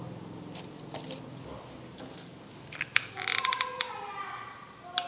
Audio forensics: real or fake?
real